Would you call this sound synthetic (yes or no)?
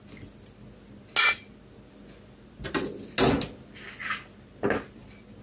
no